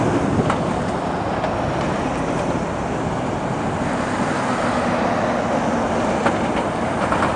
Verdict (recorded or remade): recorded